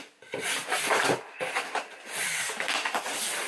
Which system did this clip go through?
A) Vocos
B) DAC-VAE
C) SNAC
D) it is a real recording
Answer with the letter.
D